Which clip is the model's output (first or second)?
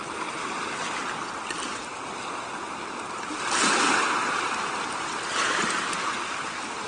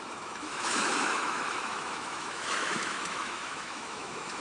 second